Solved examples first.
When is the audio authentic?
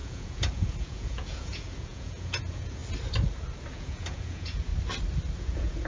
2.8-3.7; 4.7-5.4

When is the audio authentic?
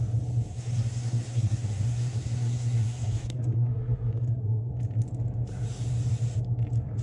0.0-0.5; 4.7-7.0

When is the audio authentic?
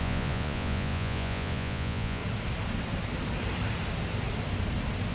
2.2-5.1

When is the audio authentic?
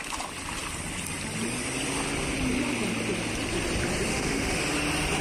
0.0-4.1; 4.6-5.2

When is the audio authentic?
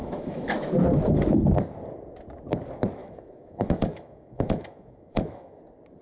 0.7-3.0; 5.6-6.0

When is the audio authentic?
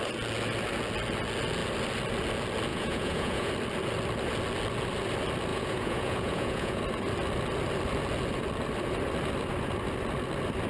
0.0-2.7; 3.5-5.5; 6.8-10.7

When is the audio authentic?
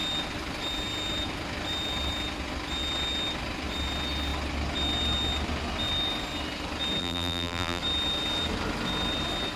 0.0-7.0; 7.8-9.6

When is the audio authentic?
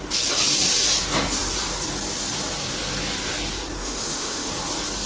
0.0-3.8; 4.5-5.1